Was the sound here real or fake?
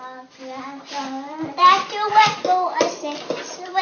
real